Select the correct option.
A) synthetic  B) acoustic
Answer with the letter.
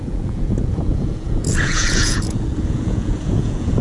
A